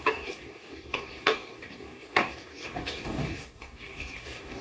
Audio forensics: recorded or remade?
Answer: remade